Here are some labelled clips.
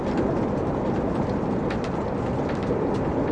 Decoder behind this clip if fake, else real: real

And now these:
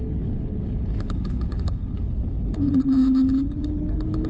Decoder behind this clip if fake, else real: fake, codec, HILCodec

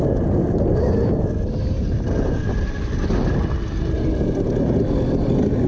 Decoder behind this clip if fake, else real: real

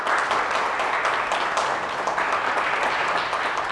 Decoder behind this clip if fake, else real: real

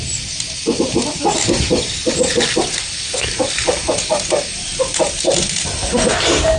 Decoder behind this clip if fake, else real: real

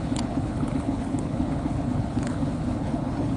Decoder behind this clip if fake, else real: fake, codec, HILCodec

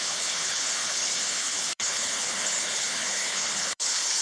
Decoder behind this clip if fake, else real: fake, codec, HILCodec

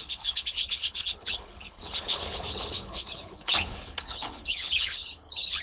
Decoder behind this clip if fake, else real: fake, codec, HILCodec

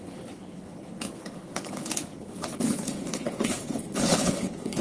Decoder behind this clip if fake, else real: fake, codec, HILCodec